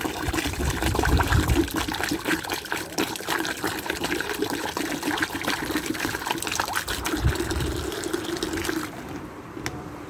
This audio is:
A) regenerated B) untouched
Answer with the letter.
A